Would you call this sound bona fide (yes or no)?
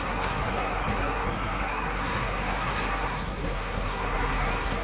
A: no